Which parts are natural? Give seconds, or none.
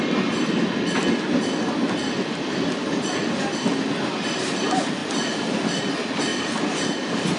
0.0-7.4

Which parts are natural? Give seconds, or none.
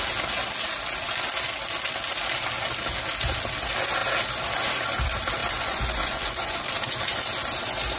0.0-5.4; 6.6-8.0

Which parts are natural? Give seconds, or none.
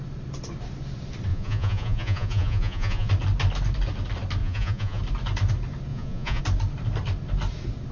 0.0-1.3; 3.1-4.4; 5.0-5.9; 6.4-7.9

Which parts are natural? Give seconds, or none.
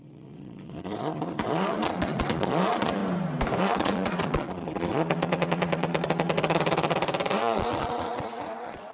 3.0-3.6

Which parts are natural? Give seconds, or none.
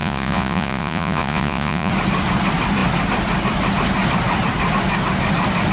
1.9-5.7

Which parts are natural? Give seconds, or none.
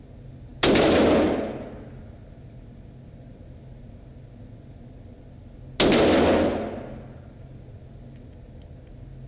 0.0-9.3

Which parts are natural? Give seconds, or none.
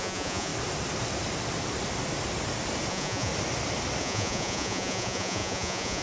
0.5-2.9; 3.3-4.0